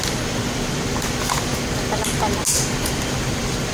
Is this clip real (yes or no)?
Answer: yes